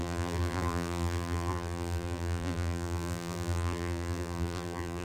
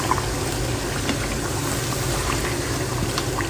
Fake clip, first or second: first